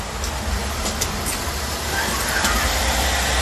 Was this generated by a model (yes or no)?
no